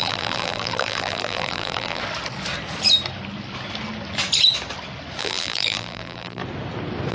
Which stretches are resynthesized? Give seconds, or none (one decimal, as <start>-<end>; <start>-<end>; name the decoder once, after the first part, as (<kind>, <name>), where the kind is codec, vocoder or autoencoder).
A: 0.0-2.0 (vocoder, BigVGAN v2); 5.2-6.4